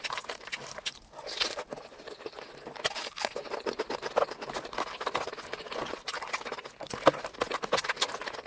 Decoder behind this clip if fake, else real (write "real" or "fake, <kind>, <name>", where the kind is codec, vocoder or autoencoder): real